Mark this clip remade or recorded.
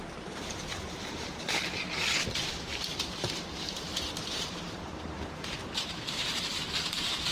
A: remade